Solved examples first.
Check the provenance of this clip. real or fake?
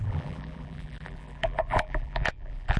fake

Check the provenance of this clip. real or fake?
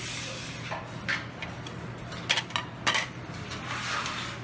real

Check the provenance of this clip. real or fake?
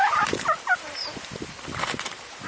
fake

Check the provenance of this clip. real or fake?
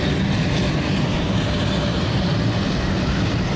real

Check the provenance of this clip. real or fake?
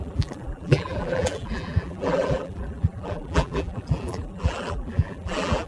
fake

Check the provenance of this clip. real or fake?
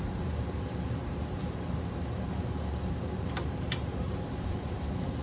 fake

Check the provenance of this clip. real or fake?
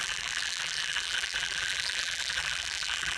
fake